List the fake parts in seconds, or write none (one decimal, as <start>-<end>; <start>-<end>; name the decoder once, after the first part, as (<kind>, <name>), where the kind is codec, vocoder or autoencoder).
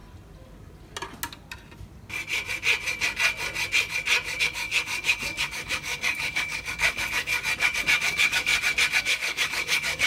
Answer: 4.4-7.3 (codec, DAC); 7.8-8.5; 9.0-10.1